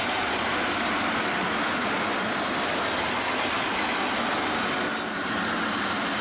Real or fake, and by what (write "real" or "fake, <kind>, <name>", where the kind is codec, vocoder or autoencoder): real